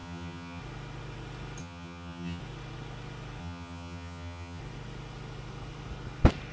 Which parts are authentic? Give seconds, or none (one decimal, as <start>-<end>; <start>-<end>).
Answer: 0.6-1.6; 2.4-3.4; 4.6-6.5